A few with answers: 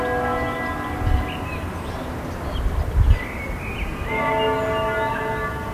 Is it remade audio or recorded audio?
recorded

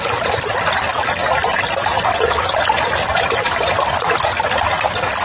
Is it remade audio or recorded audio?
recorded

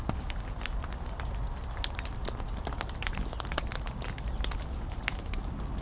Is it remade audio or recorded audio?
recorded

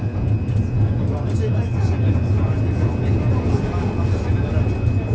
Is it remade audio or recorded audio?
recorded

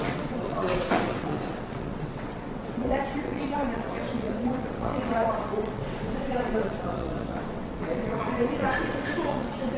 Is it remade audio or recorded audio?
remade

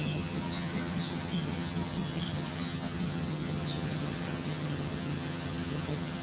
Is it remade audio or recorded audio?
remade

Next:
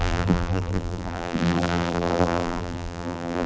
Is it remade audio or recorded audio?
remade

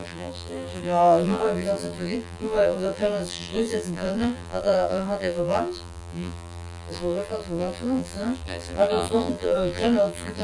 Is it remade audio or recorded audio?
remade